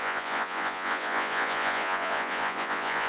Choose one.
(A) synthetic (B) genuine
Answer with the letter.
A